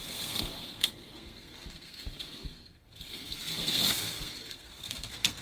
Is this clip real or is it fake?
fake